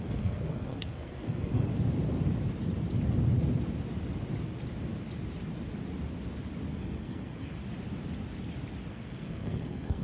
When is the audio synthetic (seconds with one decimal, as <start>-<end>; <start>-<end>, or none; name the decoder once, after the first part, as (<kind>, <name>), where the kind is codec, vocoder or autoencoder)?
0.0-1.7 (codec, SNAC); 6.7-7.6; 8.9-10.0